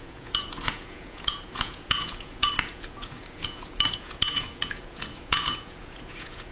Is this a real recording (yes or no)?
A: no